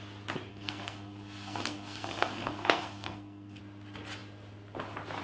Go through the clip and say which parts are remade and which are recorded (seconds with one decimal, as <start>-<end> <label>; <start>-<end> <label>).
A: 0.0-0.5 recorded; 0.5-3.6 remade; 3.6-5.2 recorded